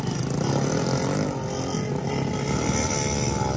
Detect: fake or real real